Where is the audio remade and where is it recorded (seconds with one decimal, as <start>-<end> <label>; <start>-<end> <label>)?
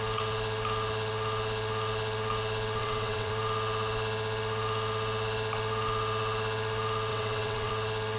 0.0-2.8 recorded; 2.8-3.3 remade; 3.3-7.1 recorded; 7.1-7.7 remade; 7.7-8.2 recorded